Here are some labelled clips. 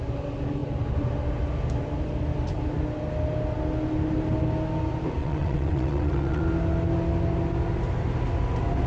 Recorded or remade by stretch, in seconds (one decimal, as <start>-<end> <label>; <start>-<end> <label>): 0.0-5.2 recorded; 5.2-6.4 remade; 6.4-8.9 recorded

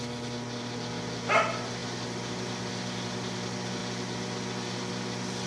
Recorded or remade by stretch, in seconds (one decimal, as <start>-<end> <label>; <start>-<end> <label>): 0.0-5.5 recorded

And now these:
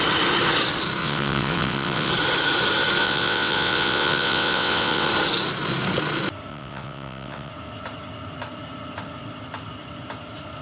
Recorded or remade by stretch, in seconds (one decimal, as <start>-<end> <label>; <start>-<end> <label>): 0.0-1.0 recorded; 1.0-2.1 remade; 2.1-3.0 recorded; 3.0-5.1 remade; 5.1-6.5 recorded; 6.5-7.5 remade; 7.5-10.6 recorded